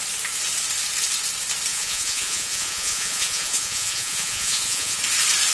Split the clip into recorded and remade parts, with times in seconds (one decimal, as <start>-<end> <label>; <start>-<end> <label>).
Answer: 0.0-1.7 recorded; 1.7-5.0 remade; 5.0-5.5 recorded